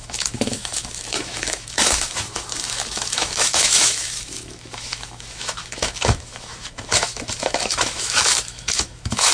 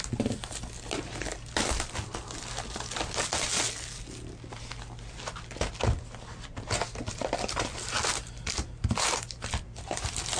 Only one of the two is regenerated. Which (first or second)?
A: first